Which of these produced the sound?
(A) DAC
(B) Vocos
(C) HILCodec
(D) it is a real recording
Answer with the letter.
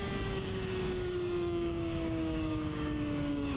A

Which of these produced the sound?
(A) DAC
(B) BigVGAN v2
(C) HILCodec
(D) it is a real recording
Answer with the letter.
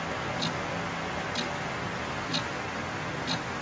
D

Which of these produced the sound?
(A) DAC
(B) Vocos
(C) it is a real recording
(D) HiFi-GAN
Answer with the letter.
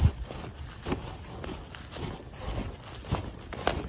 C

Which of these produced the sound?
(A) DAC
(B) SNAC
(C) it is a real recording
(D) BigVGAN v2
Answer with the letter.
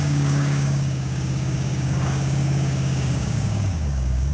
A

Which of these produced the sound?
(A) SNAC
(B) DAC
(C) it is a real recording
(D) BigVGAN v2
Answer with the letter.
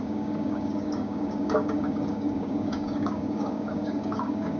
B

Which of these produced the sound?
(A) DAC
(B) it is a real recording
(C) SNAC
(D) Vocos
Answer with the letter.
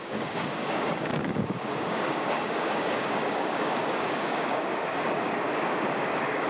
A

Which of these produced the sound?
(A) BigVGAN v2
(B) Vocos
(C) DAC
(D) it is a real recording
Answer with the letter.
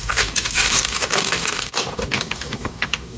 C